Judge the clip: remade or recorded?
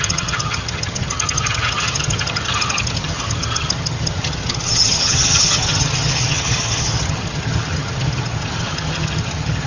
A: remade